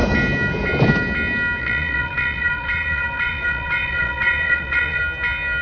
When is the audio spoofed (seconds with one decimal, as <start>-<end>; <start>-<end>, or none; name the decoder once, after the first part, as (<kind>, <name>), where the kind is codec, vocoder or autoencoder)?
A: 1.6-5.0 (vocoder, Vocos)